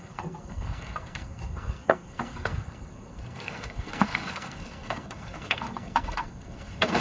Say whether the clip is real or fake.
fake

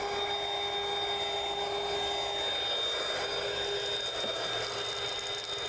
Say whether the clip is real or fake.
real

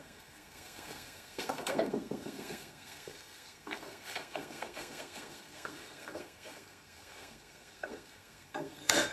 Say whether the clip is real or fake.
fake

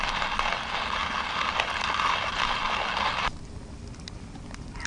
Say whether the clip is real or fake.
real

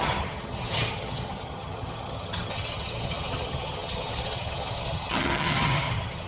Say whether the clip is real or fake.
fake